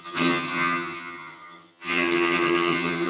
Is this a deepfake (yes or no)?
yes